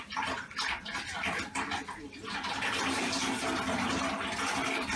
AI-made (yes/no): no